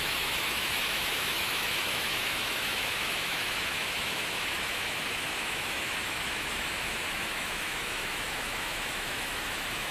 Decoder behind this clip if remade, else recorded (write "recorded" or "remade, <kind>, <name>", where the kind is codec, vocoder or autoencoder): remade, autoencoder, DAC-VAE